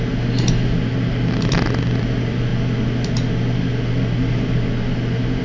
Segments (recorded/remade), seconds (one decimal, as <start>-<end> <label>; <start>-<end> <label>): 0.0-5.4 recorded